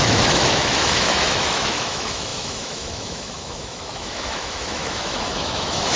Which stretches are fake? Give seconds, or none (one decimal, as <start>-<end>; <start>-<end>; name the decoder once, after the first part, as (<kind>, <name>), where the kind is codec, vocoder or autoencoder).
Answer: 0.0-6.0 (autoencoder, DAC-VAE)